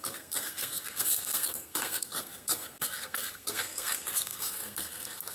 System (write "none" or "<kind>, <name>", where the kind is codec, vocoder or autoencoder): codec, SNAC